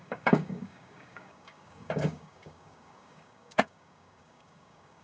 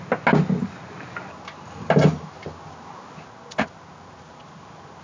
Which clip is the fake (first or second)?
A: first